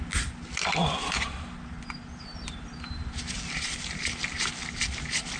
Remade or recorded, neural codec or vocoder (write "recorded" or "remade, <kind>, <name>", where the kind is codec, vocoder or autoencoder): recorded